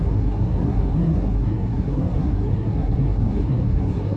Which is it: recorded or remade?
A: remade